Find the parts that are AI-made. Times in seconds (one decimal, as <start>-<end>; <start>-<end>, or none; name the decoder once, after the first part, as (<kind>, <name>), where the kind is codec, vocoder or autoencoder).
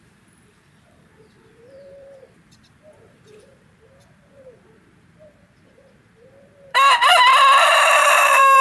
0.0-7.1 (vocoder, BigVGAN v2); 7.9-8.6